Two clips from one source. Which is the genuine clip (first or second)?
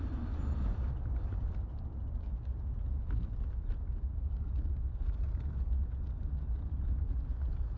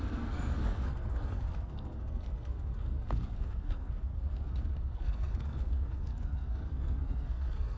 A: first